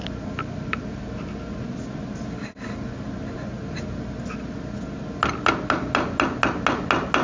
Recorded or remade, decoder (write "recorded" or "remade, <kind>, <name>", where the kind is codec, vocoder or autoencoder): recorded